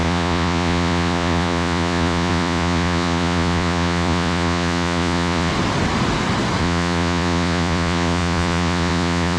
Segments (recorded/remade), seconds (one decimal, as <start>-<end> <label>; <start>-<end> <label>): 0.0-5.5 remade; 5.5-6.6 recorded; 6.6-9.4 remade